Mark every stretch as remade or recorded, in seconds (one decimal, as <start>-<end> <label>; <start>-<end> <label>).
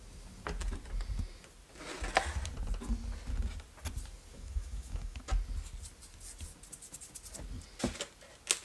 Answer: 0.0-4.3 recorded; 4.3-5.2 remade; 5.2-8.6 recorded